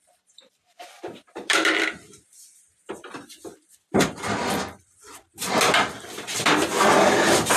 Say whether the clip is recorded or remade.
remade